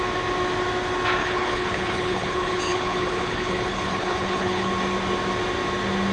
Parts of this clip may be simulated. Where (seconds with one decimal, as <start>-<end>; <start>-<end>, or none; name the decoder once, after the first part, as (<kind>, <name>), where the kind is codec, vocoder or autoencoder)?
1.2-4.7 (codec, HILCodec)